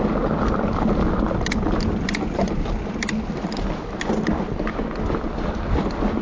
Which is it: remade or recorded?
recorded